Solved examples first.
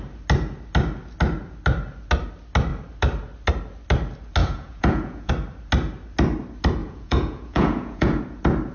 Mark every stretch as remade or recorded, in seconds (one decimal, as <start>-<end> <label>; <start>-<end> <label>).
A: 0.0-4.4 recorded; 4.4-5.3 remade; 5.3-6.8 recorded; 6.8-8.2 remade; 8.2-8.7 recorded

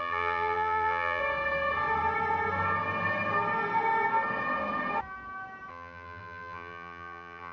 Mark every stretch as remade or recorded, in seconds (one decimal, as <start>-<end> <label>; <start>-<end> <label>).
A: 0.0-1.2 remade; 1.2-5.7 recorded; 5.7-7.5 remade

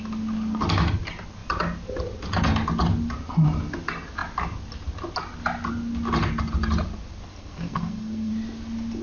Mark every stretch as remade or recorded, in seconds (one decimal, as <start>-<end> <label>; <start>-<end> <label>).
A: 0.0-7.3 recorded; 7.3-8.3 remade; 8.3-9.0 recorded

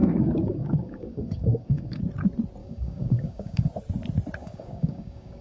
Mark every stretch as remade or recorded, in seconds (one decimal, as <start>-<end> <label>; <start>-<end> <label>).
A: 0.0-2.0 remade; 2.0-2.6 recorded; 2.6-3.7 remade; 3.7-4.4 recorded; 4.4-5.4 remade

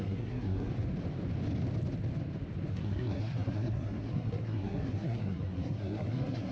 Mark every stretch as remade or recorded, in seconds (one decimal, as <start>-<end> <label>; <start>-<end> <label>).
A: 0.0-0.7 remade; 0.7-2.7 recorded; 2.7-6.5 remade

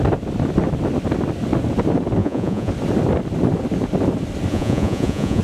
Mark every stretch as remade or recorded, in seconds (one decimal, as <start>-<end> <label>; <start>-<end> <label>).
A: 0.0-2.2 recorded; 2.2-2.7 remade; 2.7-4.5 recorded; 4.5-5.4 remade

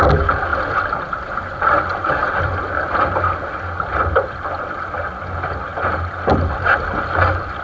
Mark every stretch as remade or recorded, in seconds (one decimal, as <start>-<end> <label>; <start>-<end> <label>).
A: 0.0-7.6 recorded

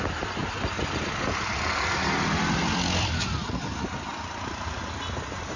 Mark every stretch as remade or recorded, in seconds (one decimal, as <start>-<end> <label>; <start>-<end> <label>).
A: 0.0-5.6 recorded